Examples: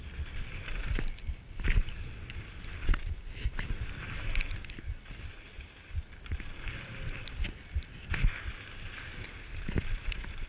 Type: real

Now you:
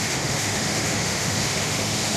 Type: fake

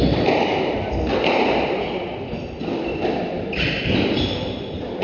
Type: real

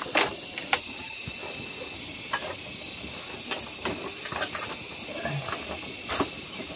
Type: real